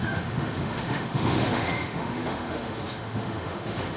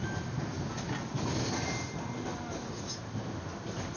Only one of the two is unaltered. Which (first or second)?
second